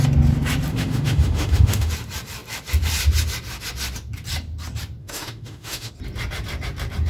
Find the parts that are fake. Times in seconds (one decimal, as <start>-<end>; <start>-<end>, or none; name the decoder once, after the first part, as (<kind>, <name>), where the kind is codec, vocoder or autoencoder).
0.7-1.9 (autoencoder, DAC-VAE); 5.0-5.9